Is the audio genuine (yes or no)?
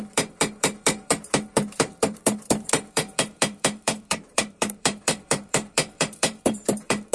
no